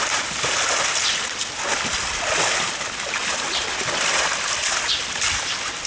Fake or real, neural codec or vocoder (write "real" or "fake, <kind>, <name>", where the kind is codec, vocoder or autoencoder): real